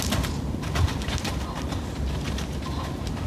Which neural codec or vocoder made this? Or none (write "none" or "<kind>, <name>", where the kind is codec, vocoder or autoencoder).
none